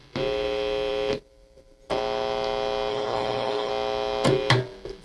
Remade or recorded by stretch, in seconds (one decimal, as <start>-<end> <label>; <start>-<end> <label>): 0.0-2.9 recorded; 2.9-3.7 remade; 3.7-5.0 recorded